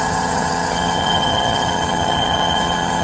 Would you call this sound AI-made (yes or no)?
yes